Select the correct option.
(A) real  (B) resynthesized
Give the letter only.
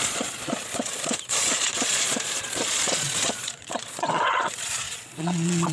B